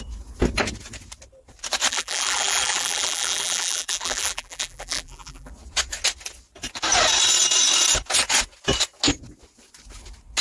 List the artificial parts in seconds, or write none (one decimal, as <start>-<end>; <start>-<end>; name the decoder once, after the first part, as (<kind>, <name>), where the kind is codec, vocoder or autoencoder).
1.9-5.5 (vocoder, BigVGAN v2)